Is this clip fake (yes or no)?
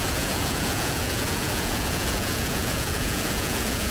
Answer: yes